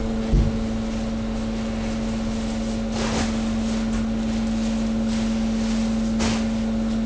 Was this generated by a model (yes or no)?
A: no